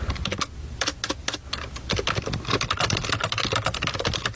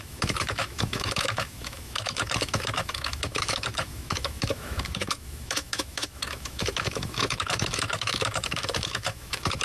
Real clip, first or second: first